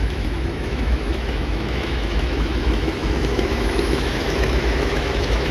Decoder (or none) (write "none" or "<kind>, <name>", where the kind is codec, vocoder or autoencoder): autoencoder, DAC-VAE